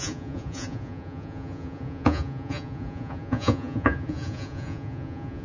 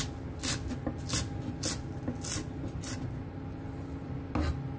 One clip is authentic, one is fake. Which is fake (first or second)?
first